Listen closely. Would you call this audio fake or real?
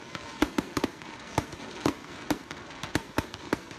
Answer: fake